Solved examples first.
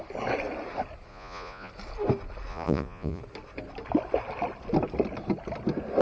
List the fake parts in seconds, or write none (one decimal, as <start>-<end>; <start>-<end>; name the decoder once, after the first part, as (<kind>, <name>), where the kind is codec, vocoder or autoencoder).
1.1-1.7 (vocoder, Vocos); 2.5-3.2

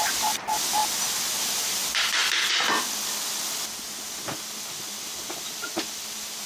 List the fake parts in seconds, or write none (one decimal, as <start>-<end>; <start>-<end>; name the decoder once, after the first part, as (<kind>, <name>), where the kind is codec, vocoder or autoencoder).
0.0-0.8 (vocoder, BigVGAN v2); 1.4-2.2; 4.7-6.5

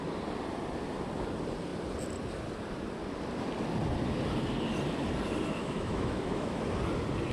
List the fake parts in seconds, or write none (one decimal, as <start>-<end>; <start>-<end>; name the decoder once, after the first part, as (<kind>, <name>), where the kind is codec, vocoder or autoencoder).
5.6-6.6 (autoencoder, DAC-VAE)

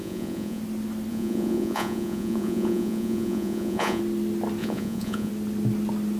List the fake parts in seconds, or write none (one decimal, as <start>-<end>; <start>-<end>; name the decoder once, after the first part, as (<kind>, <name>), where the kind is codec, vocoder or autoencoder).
0.0-0.6 (vocoder, Vocos); 1.1-4.0; 4.6-5.3

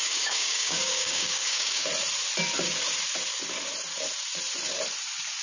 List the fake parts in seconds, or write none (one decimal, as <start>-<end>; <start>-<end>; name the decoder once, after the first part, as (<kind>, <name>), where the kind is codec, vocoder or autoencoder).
0.0-1.9 (codec, DAC)

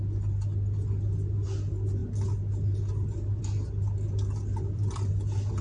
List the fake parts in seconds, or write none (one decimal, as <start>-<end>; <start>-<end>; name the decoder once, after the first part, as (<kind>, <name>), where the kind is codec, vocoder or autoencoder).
4.4-5.1 (vocoder, BigVGAN v2)

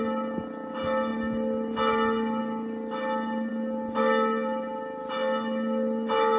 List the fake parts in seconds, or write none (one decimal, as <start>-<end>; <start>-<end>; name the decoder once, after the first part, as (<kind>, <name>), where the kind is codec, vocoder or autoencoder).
none

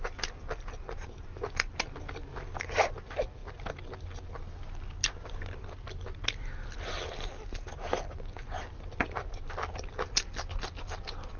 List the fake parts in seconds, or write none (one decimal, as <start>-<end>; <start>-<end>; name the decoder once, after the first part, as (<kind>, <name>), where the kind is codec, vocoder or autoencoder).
none